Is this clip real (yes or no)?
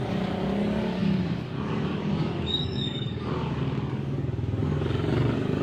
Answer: no